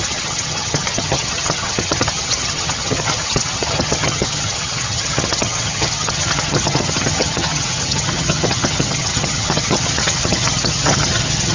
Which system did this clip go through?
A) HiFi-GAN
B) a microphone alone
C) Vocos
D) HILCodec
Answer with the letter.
A